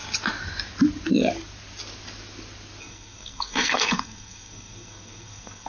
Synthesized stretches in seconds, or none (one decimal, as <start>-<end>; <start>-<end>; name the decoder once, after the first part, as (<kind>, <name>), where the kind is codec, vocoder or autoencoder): 2.8-5.7 (codec, SNAC)